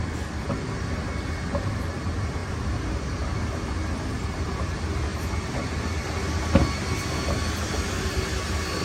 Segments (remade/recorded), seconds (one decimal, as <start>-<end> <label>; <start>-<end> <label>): 0.0-8.8 recorded